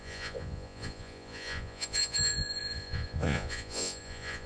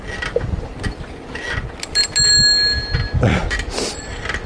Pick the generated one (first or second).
first